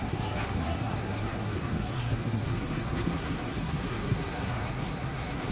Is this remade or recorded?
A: remade